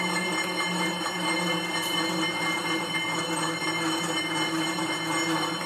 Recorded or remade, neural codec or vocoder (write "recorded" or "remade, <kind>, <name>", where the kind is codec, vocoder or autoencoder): recorded